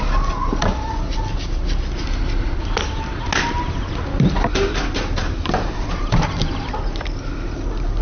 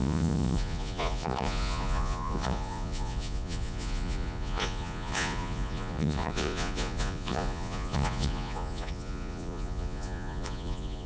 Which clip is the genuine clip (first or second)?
first